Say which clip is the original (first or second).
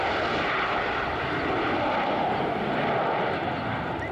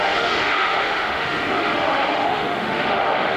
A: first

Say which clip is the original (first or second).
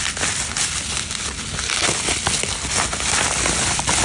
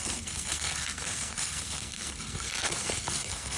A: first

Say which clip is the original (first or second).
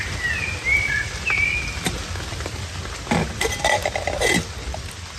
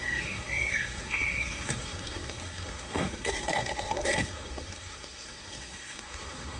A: first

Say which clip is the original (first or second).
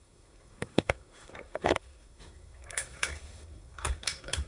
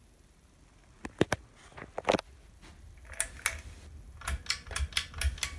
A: second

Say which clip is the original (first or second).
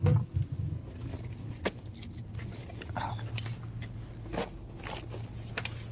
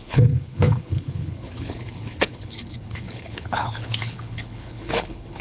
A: first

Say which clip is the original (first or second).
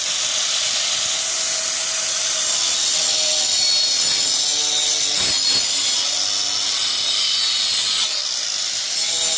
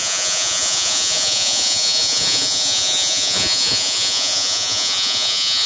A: first